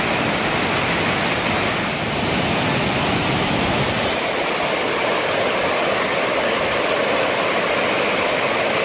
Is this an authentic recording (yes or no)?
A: yes